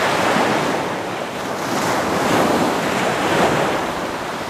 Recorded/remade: recorded